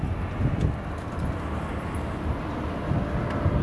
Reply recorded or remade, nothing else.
recorded